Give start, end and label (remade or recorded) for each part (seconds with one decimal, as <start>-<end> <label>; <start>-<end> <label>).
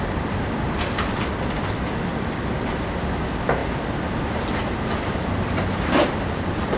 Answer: 0.0-6.8 recorded